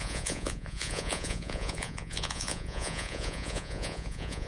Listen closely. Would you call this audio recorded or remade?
remade